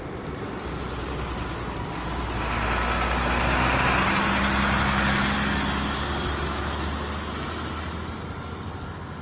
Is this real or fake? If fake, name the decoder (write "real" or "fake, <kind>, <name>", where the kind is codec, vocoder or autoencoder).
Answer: real